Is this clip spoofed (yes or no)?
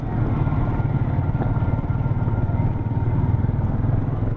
no